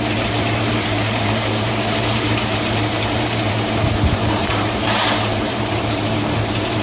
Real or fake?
fake